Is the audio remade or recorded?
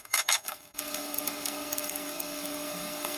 remade